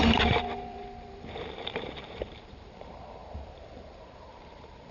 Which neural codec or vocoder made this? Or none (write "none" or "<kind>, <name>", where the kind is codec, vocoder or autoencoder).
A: vocoder, BigVGAN v2